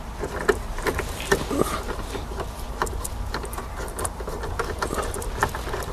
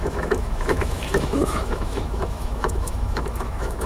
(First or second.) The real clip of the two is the first